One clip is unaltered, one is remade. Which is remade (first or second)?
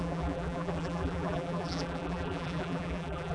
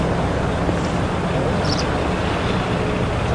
first